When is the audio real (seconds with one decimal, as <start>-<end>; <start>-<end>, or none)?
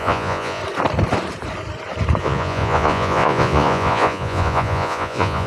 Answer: 0.6-2.2